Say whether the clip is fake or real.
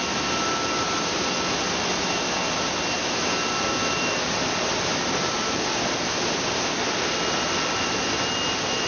real